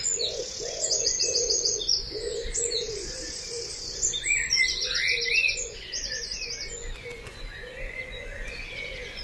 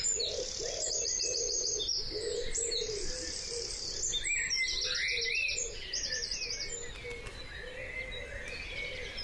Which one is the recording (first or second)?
second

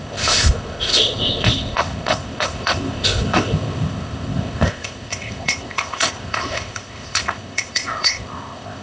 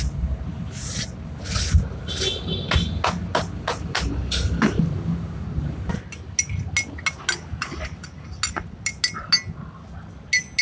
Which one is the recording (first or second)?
second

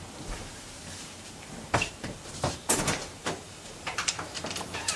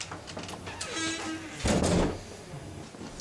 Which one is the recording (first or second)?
second